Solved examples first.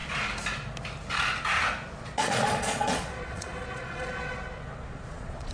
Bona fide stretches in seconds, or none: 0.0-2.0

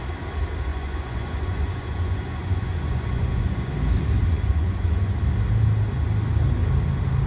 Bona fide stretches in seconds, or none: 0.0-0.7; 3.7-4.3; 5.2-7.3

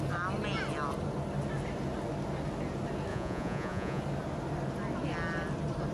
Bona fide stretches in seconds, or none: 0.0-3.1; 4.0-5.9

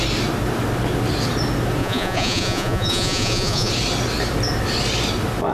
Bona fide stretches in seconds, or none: 0.0-1.8; 3.7-5.5

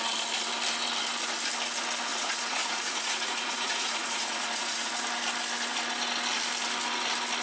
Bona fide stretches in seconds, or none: 0.0-2.1; 4.9-7.4

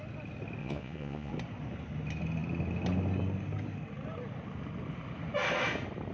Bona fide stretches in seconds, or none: 0.0-0.6; 1.3-6.1